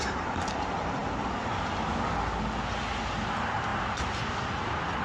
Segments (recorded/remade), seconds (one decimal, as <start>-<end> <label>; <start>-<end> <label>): 0.0-5.0 recorded